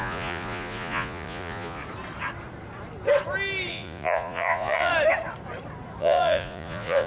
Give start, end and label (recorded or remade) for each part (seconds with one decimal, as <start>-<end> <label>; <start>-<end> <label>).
0.0-1.8 remade; 1.8-3.7 recorded; 3.7-4.9 remade; 4.9-6.0 recorded; 6.0-7.1 remade